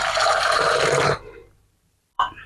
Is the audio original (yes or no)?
no